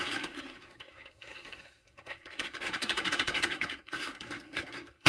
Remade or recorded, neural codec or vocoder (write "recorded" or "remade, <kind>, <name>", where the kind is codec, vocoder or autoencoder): remade, codec, SNAC